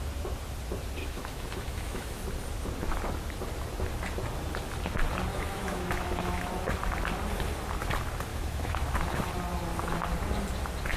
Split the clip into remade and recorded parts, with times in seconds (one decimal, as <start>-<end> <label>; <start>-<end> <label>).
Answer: 0.0-1.0 recorded; 1.0-2.2 remade; 2.2-5.3 recorded; 5.3-6.5 remade; 6.5-8.3 recorded; 8.3-9.3 remade; 9.3-11.0 recorded